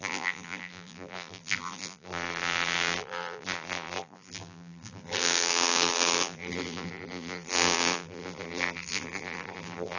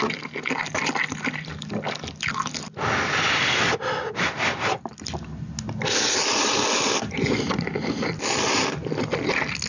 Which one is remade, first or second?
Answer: first